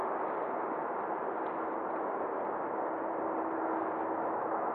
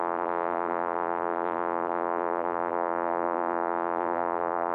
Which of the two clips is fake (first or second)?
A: second